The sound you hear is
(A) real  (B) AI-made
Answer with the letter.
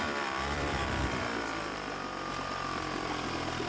B